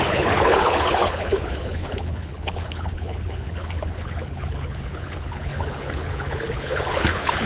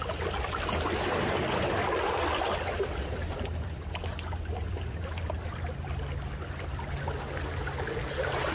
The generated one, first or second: first